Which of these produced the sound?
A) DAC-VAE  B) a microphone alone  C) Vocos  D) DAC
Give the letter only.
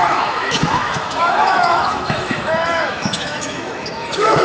A